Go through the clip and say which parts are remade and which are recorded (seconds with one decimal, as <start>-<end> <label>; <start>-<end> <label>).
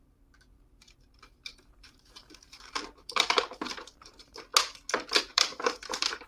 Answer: 0.0-4.5 remade; 4.5-5.2 recorded; 5.2-6.3 remade